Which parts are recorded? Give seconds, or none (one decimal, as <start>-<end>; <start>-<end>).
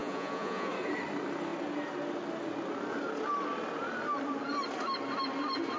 0.7-5.8